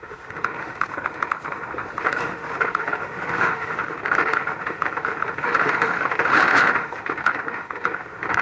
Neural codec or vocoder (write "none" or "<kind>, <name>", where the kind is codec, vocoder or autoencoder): autoencoder, DAC-VAE